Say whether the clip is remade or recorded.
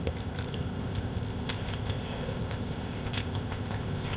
remade